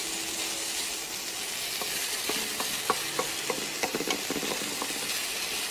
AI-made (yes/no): no